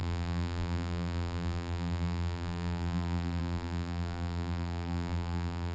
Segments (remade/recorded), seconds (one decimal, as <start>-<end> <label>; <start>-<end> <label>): 0.0-5.7 remade